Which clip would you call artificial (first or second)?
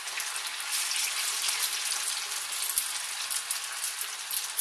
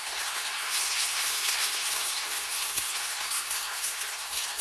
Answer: second